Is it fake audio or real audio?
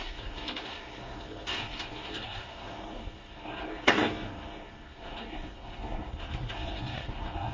fake